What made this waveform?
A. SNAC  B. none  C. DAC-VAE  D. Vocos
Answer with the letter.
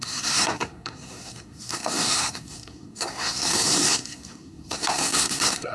A